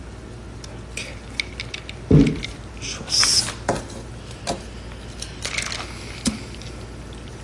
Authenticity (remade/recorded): recorded